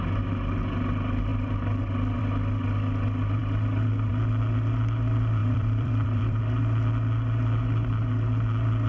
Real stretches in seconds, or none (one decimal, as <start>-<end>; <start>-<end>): 0.0-1.3; 2.2-5.4; 6.4-8.9

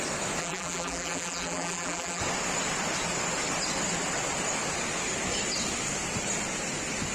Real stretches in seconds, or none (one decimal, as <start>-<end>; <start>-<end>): 0.0-0.4; 2.2-7.1